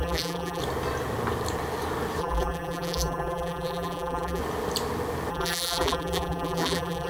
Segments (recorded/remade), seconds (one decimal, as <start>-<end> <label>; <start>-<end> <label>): 0.0-0.6 remade; 0.6-2.2 recorded; 2.2-4.4 remade; 4.4-5.3 recorded; 5.3-7.1 remade